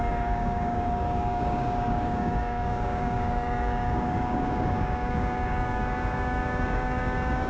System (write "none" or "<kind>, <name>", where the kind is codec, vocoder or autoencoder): codec, DAC